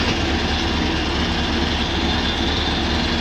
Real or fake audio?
real